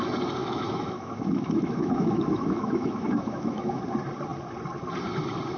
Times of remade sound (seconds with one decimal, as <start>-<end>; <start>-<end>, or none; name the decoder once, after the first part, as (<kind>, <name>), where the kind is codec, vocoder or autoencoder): 0.4-3.8 (autoencoder, DAC-VAE)